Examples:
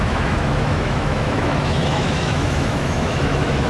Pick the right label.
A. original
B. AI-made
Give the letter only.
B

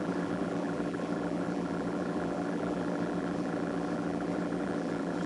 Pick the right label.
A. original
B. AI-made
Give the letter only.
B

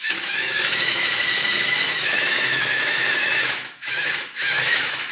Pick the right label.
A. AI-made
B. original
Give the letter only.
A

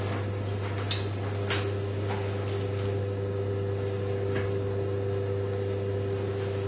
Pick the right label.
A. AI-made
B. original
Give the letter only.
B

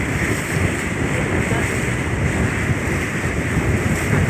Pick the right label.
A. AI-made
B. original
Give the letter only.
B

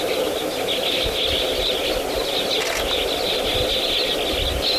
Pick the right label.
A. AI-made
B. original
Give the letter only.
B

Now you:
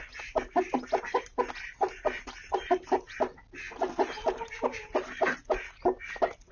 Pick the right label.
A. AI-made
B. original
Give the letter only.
B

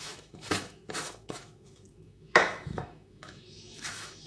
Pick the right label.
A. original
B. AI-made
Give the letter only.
B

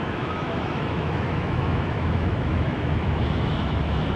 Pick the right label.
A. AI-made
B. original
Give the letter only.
A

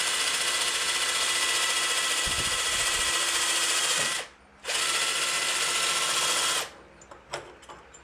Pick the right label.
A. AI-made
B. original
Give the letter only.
B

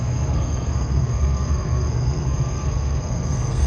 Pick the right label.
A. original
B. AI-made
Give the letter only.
B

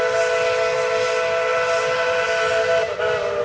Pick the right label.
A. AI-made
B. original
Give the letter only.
B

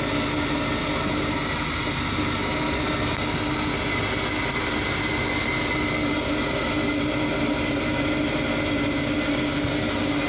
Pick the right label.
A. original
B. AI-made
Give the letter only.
A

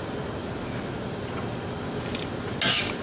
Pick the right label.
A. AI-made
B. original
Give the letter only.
B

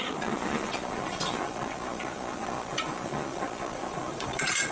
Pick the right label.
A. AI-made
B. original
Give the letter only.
A